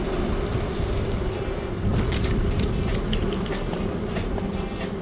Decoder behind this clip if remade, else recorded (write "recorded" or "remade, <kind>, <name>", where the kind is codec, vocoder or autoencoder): recorded